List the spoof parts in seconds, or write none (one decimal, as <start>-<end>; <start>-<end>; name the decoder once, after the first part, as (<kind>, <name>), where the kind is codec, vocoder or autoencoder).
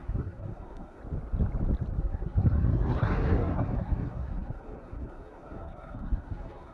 0.0-1.0 (codec, SNAC); 2.0-6.7